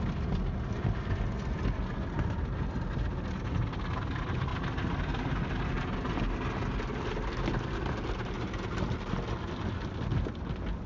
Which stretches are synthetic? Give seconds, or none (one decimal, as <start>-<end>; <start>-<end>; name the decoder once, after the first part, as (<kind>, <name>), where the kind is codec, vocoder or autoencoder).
none